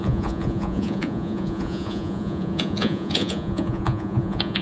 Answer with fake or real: fake